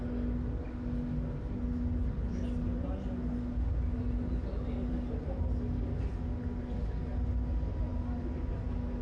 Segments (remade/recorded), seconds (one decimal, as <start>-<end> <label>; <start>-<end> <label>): 0.0-9.0 recorded